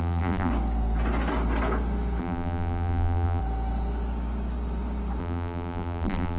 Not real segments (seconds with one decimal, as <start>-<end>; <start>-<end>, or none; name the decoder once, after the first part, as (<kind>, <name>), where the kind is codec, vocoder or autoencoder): 0.0-0.5 (vocoder, BigVGAN v2); 2.2-3.4; 5.2-6.4